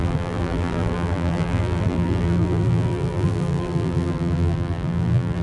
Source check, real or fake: fake